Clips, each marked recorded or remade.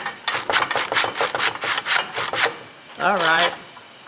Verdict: recorded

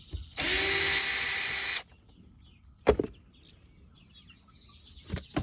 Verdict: recorded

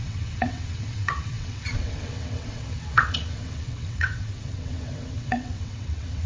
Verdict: remade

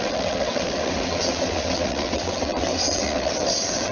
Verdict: remade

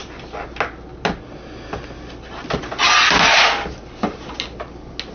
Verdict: recorded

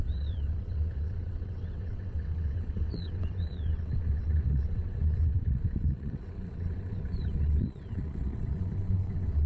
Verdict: remade